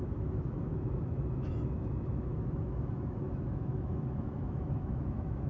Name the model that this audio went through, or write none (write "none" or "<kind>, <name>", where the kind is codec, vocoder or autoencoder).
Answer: autoencoder, DAC-VAE